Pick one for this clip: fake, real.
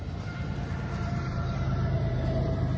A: fake